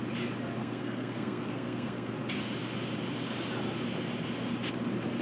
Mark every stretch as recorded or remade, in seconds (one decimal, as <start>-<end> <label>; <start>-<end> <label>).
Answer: 0.0-0.6 recorded; 0.6-2.1 remade; 2.1-5.2 recorded